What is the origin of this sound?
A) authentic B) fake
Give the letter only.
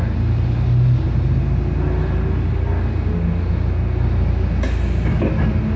A